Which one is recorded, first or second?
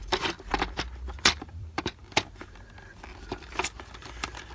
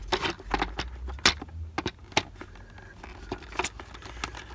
second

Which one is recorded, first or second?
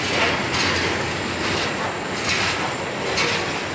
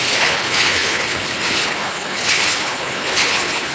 first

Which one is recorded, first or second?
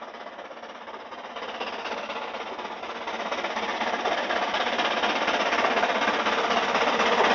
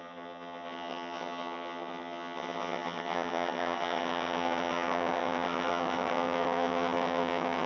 first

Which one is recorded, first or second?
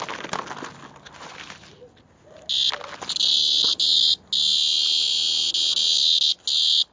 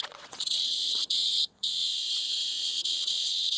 first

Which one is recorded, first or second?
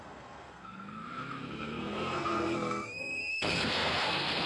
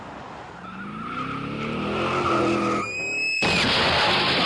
second